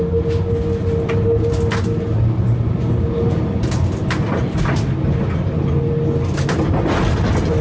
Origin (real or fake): real